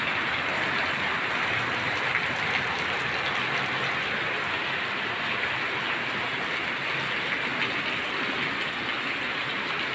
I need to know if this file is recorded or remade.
recorded